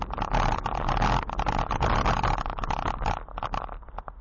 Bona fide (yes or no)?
yes